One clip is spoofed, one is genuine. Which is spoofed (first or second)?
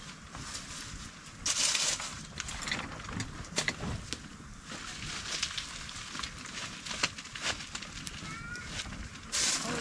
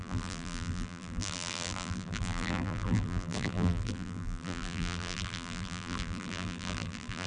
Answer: second